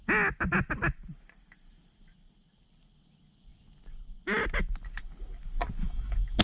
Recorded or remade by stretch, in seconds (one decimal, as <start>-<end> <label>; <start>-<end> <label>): 0.0-5.8 recorded; 5.8-6.4 remade

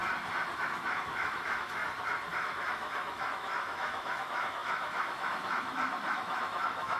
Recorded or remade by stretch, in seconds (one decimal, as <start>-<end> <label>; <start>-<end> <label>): 0.0-0.6 recorded; 0.6-1.8 remade; 1.8-2.3 recorded; 2.3-7.0 remade